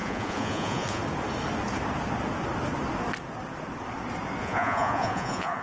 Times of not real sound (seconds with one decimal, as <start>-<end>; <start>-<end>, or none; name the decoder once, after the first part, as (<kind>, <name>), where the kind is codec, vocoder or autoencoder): 0.0-1.0 (vocoder, Vocos); 4.4-5.6